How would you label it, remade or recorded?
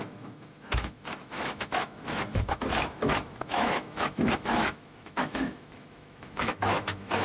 remade